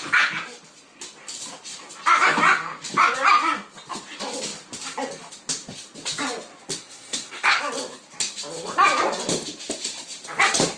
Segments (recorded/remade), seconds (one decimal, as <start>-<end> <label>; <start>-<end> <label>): 0.0-6.8 recorded; 6.8-7.6 remade; 7.6-10.8 recorded